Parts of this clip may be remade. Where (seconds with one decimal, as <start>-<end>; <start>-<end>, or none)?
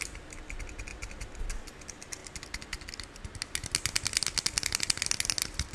none